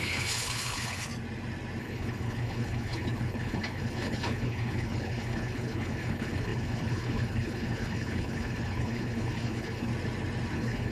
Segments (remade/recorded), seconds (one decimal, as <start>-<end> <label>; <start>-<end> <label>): 0.0-1.1 remade; 1.1-1.8 recorded; 1.8-9.9 remade; 9.9-10.5 recorded; 10.5-10.9 remade

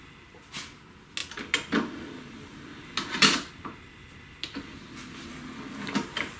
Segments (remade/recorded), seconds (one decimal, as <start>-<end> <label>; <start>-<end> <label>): 0.0-6.4 recorded

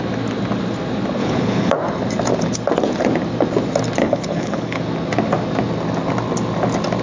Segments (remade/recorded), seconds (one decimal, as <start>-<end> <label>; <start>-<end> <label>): 0.0-1.2 recorded; 1.2-1.7 remade; 1.7-4.0 recorded; 4.0-4.8 remade; 4.8-7.0 recorded

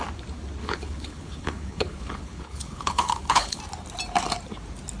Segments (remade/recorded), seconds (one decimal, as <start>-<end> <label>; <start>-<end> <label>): 0.0-0.6 recorded; 0.6-3.6 remade; 3.6-5.0 recorded

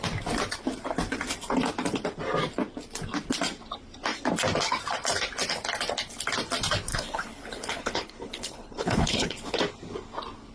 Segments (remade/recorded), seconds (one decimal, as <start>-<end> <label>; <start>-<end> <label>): 0.0-6.9 recorded; 6.9-9.6 remade; 9.6-10.5 recorded

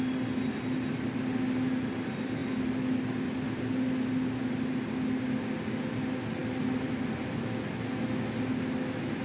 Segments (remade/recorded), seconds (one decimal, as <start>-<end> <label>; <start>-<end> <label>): 0.0-9.2 recorded